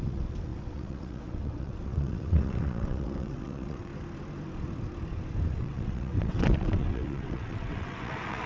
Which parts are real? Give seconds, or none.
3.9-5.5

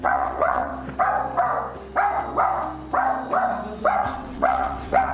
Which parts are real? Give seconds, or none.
0.7-3.8

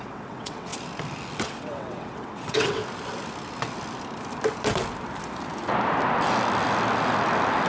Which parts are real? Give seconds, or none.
0.7-1.4; 2.8-7.7

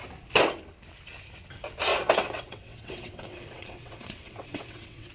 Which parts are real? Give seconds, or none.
0.0-1.9

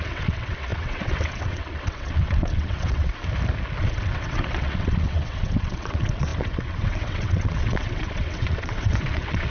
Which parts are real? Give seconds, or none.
3.2-3.8

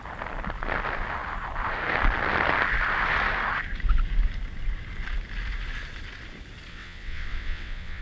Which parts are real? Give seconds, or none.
0.0-6.7

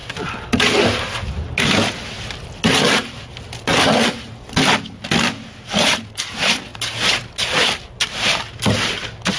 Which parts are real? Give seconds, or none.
0.0-9.4

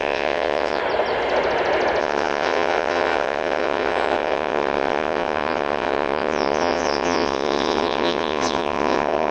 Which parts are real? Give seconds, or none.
0.8-2.0